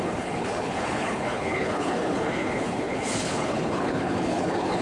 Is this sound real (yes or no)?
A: no